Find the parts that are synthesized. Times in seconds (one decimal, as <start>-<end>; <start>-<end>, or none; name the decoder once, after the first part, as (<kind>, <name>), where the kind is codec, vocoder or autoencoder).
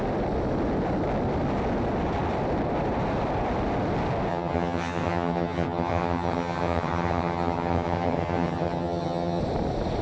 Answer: 4.3-9.4 (vocoder, HiFi-GAN)